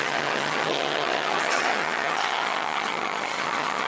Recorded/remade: remade